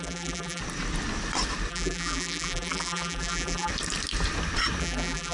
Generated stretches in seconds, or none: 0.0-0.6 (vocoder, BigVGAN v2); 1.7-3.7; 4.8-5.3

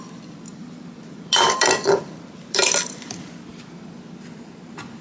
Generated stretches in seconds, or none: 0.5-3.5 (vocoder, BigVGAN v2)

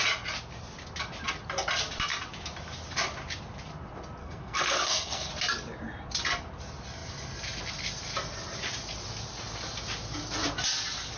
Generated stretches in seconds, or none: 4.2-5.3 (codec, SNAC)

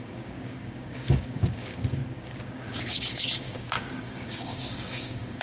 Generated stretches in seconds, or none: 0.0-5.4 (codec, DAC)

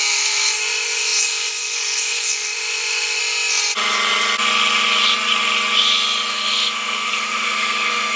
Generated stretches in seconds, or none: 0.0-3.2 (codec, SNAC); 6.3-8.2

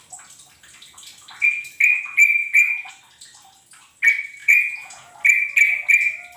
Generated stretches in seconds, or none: 2.4-2.9 (vocoder, Vocos); 4.4-5.1